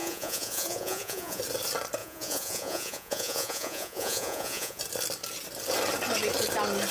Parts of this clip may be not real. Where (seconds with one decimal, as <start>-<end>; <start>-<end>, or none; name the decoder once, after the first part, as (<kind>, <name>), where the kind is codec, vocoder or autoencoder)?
0.0-1.4 (vocoder, Vocos); 2.0-4.8

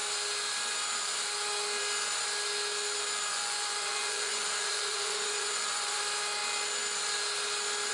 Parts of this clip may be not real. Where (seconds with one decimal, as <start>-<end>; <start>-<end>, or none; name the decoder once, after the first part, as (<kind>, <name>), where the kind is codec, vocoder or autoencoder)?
3.3-6.0 (vocoder, Vocos)

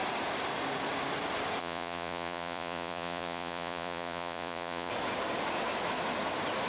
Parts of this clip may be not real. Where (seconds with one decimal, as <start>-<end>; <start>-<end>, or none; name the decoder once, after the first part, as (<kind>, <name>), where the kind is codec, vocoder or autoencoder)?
1.6-4.9 (vocoder, Vocos)